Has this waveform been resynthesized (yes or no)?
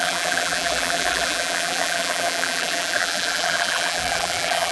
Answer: yes